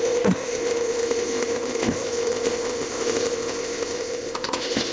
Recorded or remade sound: remade